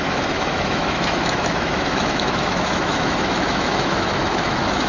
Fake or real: fake